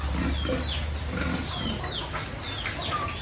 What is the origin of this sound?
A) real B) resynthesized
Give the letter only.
A